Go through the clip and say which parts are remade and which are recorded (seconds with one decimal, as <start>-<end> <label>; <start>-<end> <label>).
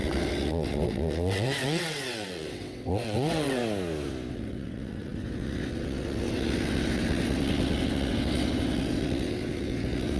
0.0-3.6 remade; 3.6-4.3 recorded; 4.3-10.2 remade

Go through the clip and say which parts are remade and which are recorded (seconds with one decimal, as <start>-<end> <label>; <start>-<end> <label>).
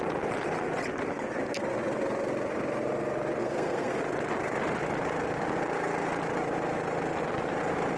0.0-3.4 recorded; 3.4-4.0 remade; 4.0-8.0 recorded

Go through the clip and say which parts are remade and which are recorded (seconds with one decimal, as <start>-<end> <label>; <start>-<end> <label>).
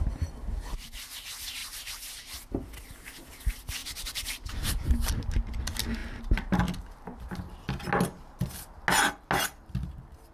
0.0-1.6 recorded; 1.6-2.1 remade; 2.1-3.8 recorded; 3.8-5.1 remade; 5.1-10.3 recorded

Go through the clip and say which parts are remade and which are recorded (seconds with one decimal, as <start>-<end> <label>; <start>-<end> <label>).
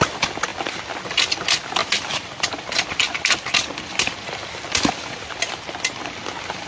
0.0-6.7 recorded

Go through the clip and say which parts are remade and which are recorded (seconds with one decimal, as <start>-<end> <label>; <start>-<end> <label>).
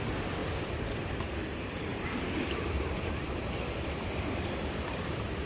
0.0-5.5 remade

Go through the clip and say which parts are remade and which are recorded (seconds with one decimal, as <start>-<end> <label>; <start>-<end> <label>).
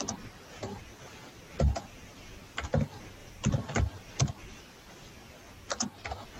0.0-3.2 recorded; 3.2-3.8 remade; 3.8-6.4 recorded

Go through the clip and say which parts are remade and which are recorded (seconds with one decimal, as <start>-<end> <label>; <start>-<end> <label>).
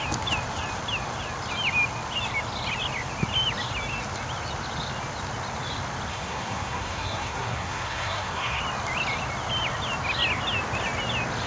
0.0-6.1 recorded; 6.1-8.6 remade; 8.6-11.5 recorded